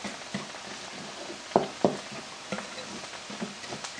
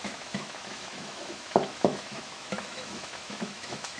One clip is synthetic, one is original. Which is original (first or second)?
first